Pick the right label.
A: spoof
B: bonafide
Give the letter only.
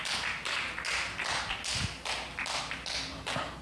B